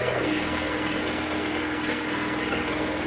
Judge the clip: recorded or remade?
remade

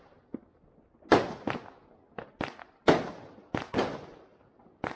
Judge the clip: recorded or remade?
recorded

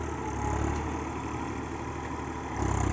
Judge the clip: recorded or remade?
recorded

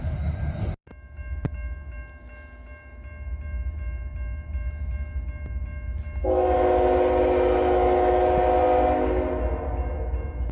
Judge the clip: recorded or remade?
recorded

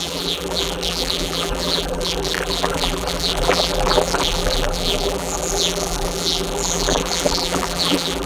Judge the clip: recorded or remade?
remade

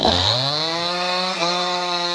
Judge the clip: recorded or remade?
remade